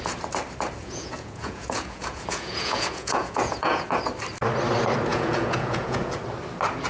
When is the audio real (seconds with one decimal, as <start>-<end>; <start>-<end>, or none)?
0.0-0.8; 4.0-5.1; 6.2-6.9